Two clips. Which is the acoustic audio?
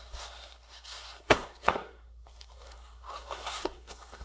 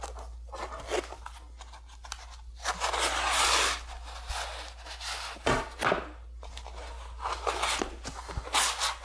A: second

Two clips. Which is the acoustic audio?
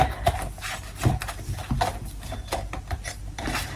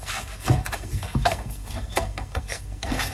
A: first